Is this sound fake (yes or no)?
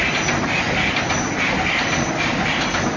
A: no